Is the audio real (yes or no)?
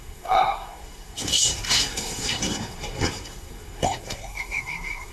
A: no